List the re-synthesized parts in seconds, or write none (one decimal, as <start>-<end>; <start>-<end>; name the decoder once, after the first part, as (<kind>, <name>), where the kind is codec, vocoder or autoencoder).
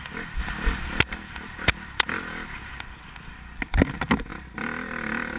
none